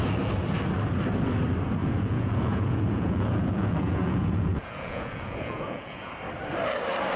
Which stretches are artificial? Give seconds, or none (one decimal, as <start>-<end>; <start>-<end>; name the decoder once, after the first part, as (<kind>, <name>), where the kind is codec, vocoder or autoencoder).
1.8-6.1 (vocoder, Vocos)